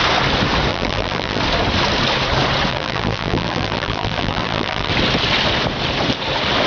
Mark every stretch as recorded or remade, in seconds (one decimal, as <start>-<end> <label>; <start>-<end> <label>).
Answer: 0.0-0.7 recorded; 0.7-1.4 remade; 1.4-2.7 recorded; 2.7-4.9 remade; 4.9-6.7 recorded